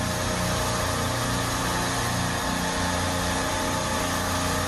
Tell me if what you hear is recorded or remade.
recorded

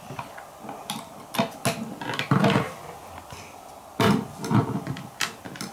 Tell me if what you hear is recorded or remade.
recorded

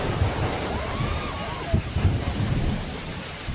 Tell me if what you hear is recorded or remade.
remade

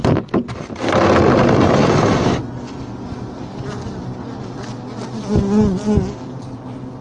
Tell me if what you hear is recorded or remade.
recorded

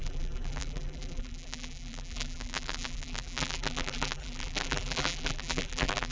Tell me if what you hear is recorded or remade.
remade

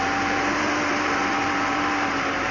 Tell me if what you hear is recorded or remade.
remade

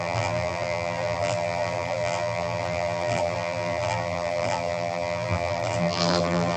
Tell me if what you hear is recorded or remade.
remade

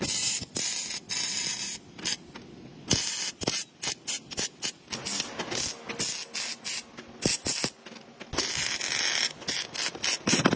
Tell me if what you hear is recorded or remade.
recorded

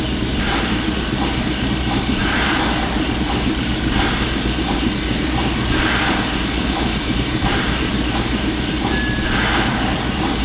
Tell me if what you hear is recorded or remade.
remade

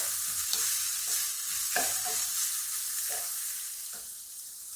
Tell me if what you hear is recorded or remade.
remade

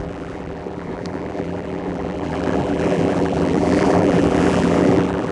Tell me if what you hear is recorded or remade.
remade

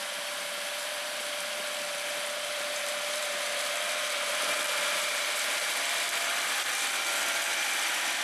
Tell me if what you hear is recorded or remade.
remade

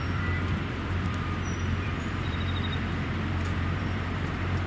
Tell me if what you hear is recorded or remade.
remade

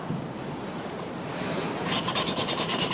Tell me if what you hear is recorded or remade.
remade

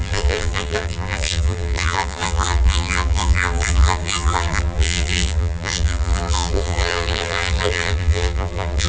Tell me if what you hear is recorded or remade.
remade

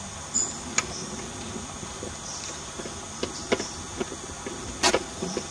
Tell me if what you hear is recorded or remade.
recorded